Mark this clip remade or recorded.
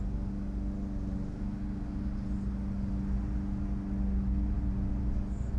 recorded